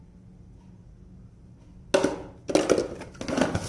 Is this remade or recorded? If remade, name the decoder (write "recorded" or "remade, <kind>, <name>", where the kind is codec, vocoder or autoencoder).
recorded